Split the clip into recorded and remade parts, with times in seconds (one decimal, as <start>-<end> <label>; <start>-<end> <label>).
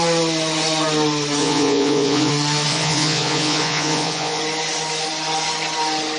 0.0-1.4 recorded; 1.4-2.3 remade; 2.3-2.7 recorded; 2.7-4.4 remade; 4.4-6.2 recorded